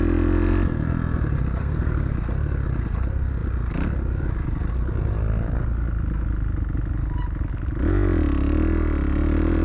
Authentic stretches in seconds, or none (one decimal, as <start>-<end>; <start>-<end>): 0.0-1.6; 2.1-9.6